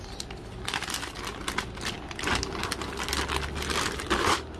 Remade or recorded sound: recorded